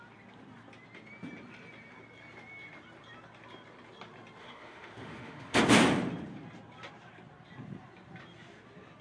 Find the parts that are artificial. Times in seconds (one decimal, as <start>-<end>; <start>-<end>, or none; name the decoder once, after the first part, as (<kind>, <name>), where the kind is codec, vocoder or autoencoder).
4.4-5.6 (autoencoder, DAC-VAE)